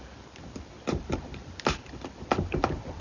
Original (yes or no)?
yes